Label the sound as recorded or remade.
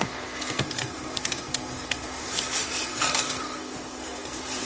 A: remade